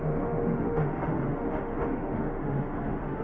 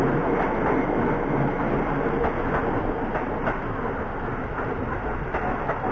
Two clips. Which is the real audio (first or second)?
second